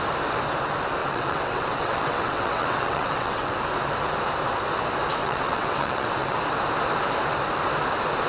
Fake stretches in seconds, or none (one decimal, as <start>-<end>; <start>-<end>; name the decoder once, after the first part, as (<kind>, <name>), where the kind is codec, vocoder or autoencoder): 1.0-3.5 (vocoder, WaveNeXt); 5.2-6.4